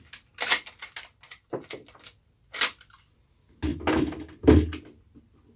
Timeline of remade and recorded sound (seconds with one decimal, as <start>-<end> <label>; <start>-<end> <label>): 0.0-5.6 recorded